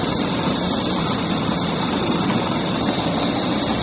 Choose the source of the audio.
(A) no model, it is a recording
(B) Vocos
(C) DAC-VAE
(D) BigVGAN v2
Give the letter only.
D